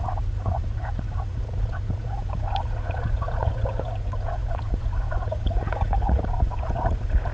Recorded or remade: remade